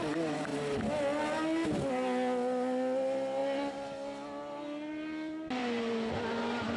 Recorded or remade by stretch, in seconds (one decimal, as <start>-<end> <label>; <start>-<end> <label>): 0.0-6.8 recorded